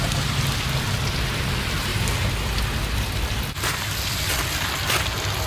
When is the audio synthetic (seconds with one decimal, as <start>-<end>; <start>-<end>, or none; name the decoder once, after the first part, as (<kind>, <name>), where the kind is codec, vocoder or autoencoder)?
none